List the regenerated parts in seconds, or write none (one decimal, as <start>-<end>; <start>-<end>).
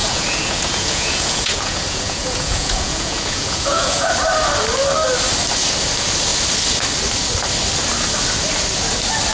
0.0-4.1